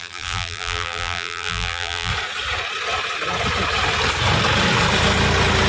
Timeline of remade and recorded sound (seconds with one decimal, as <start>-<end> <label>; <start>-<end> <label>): 0.0-2.1 remade; 2.1-5.7 recorded